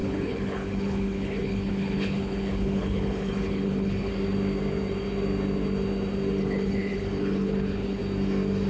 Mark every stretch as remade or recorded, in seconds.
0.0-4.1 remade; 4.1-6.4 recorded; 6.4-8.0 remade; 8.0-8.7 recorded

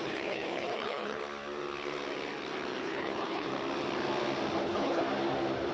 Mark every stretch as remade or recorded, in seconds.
0.0-1.2 remade; 1.2-2.8 recorded; 2.8-3.5 remade; 3.5-4.6 recorded; 4.6-5.0 remade; 5.0-5.7 recorded